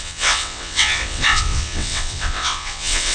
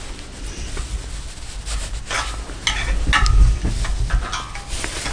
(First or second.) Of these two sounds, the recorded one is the second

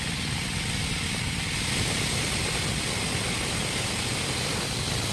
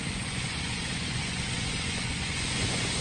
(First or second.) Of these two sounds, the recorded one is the first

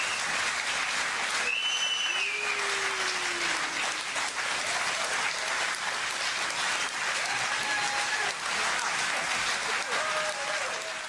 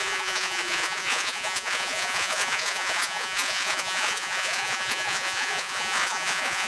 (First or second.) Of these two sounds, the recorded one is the first